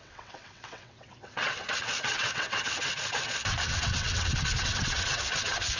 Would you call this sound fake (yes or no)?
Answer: yes